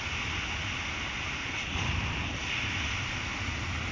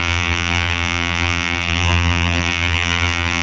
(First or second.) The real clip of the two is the first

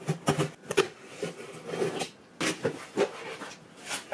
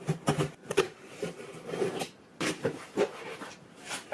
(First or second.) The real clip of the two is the first